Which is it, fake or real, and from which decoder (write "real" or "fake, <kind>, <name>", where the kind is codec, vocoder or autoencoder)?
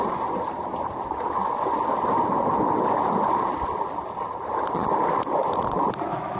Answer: real